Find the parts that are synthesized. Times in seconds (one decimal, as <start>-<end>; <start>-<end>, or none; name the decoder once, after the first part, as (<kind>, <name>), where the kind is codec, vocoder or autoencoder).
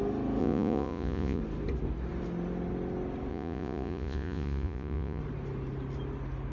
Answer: 0.4-1.4 (vocoder, Vocos); 3.3-5.2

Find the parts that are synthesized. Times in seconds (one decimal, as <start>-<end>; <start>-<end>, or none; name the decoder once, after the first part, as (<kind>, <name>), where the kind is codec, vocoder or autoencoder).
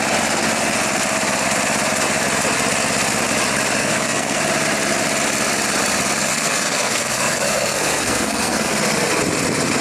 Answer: 3.8-4.4 (codec, SNAC); 6.3-8.7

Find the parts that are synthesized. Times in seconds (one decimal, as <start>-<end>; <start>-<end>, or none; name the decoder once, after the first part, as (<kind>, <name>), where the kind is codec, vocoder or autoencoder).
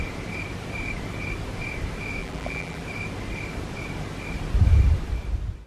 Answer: 2.2-2.8 (vocoder, BigVGAN v2)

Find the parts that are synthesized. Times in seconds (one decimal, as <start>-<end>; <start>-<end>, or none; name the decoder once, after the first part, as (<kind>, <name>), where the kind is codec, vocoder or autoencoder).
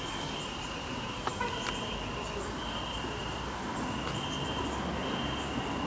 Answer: none